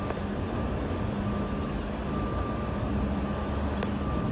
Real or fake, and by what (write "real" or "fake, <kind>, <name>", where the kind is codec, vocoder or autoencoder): real